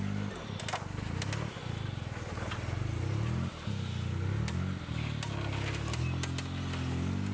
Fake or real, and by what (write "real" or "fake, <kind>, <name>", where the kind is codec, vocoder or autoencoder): real